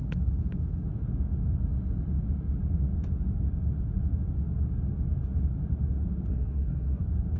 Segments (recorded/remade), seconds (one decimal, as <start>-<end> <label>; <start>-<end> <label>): 0.0-6.3 recorded; 6.3-7.0 remade; 7.0-7.4 recorded